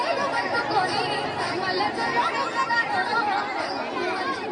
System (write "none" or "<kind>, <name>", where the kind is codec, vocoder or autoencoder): none